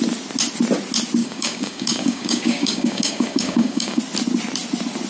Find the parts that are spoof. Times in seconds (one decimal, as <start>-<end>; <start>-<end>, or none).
1.2-4.0